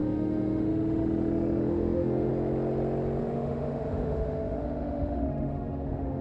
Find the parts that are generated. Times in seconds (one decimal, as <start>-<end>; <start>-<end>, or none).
0.0-2.3; 3.2-6.2